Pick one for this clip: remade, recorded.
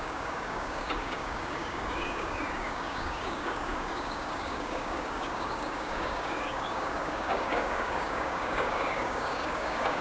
remade